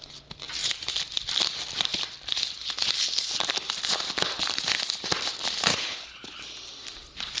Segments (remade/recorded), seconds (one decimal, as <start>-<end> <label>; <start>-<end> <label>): 0.0-5.7 recorded; 5.7-6.4 remade; 6.4-7.4 recorded